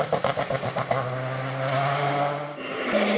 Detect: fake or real real